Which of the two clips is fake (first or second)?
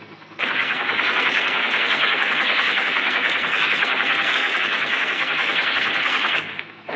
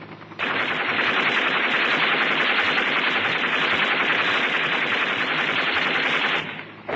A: first